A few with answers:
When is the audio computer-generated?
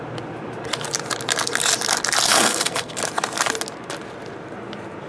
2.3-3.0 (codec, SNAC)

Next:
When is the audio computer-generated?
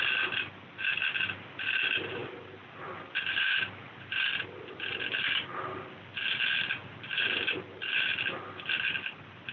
none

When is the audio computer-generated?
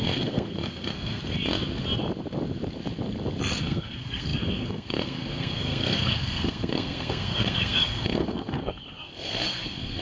0.0-1.2 (codec, SNAC); 3.6-10.0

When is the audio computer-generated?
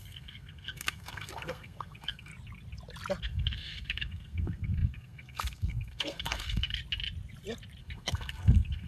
0.0-2.3 (codec, SNAC); 3.2-6.8; 7.8-8.9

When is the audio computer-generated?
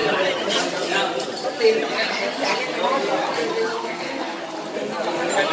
3.7-4.4 (codec, SNAC)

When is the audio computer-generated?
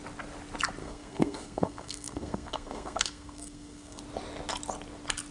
0.8-4.0 (codec, SNAC)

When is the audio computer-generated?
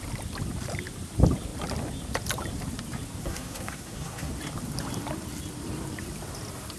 3.2-4.3 (codec, SNAC)